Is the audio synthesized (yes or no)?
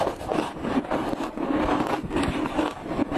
no